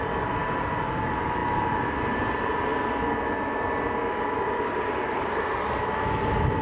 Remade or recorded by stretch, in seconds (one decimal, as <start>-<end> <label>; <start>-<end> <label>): 0.0-6.6 recorded

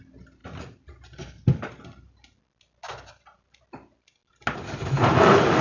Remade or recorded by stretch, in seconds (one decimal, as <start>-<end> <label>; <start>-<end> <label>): 0.0-5.6 recorded

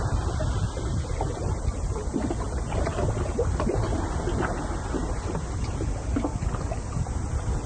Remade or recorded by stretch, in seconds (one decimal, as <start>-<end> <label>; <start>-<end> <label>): 0.0-7.7 recorded

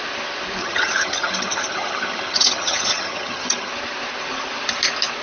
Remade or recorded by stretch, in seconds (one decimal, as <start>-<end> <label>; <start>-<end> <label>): 0.0-0.6 recorded; 0.6-3.7 remade; 3.7-5.2 recorded

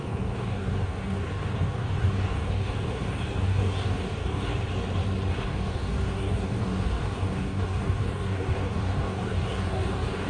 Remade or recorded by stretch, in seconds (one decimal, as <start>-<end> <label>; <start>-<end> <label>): 0.0-4.5 remade; 4.5-5.3 recorded; 5.3-10.3 remade

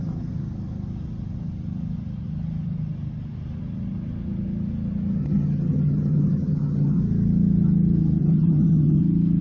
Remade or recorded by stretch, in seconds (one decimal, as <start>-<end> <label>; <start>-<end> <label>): 0.0-5.2 recorded; 5.2-7.0 remade; 7.0-8.2 recorded; 8.2-9.0 remade; 9.0-9.4 recorded

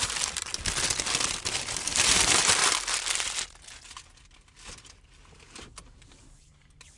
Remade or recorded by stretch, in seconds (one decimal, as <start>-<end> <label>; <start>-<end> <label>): 0.0-0.5 remade; 0.5-1.8 recorded; 1.8-2.6 remade; 2.6-5.2 recorded; 5.2-7.0 remade

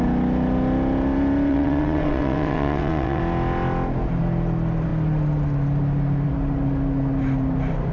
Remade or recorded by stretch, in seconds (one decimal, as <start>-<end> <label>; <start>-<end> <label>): 0.0-1.5 recorded; 1.5-3.2 remade; 3.2-7.9 recorded